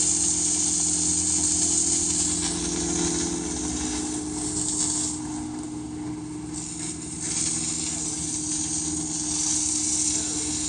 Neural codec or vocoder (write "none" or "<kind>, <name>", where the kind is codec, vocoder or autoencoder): vocoder, BigVGAN v2